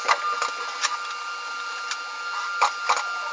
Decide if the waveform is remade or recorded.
recorded